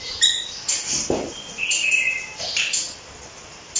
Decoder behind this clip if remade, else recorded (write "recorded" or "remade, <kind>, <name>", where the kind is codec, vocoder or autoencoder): recorded